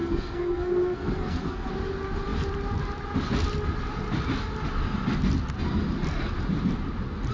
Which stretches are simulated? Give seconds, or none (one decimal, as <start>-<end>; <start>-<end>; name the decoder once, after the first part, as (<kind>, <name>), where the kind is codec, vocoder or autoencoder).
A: 0.0-1.7 (codec, SNAC)